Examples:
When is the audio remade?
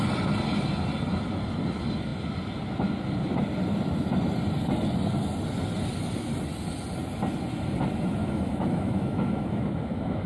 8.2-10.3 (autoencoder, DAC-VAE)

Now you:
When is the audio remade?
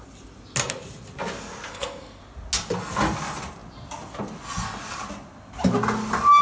1.7-2.2 (codec, SNAC)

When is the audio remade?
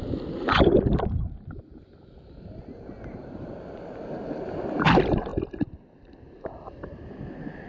3.2-3.9 (vocoder, BigVGAN v2); 5.3-6.1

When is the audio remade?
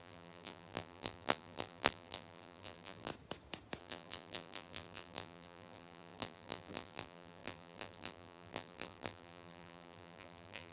0.0-3.1 (vocoder, BigVGAN v2); 3.8-10.7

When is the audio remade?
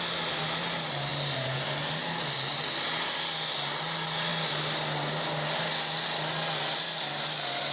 none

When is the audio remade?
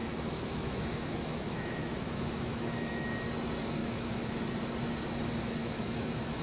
0.0-3.1 (autoencoder, DAC-VAE); 3.8-4.4; 5.6-6.4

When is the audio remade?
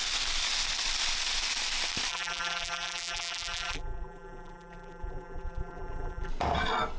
2.1-6.3 (vocoder, BigVGAN v2)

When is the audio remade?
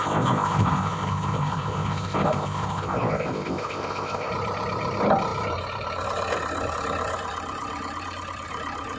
0.0-4.3 (codec, ZipCodec)